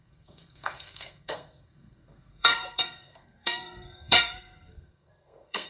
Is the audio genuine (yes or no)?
no